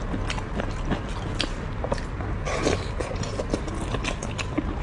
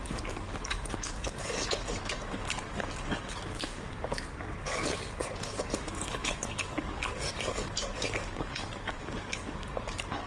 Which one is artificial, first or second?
second